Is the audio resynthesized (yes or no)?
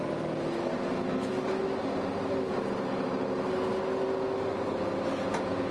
no